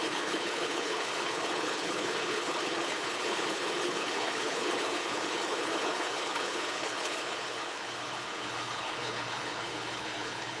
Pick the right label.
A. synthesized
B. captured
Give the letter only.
A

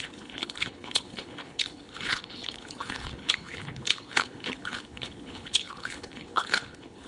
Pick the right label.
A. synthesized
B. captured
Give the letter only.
A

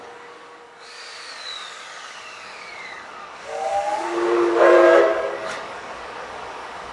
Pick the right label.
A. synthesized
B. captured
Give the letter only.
A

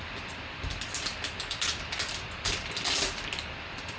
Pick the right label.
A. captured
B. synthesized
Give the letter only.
A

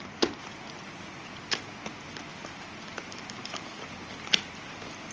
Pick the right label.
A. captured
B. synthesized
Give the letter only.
A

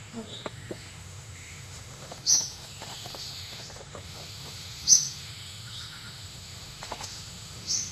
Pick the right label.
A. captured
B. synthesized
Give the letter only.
B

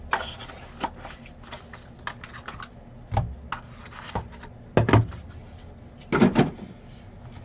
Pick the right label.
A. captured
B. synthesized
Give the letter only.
A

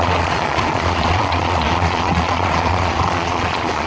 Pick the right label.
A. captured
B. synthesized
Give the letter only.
B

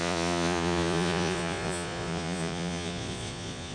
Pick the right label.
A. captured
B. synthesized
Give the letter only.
B